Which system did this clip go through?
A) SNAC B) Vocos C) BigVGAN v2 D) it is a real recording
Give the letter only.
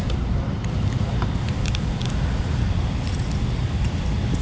D